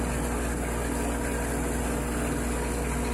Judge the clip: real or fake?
real